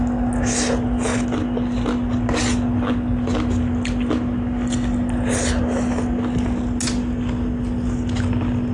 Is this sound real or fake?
real